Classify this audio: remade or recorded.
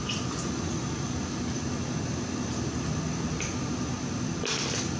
recorded